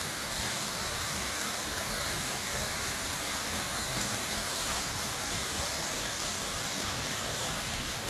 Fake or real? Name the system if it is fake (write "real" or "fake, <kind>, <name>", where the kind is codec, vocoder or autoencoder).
fake, codec, DAC